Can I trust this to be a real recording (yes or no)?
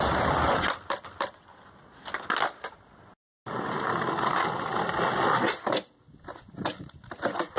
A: yes